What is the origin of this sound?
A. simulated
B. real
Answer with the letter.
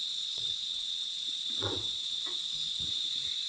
A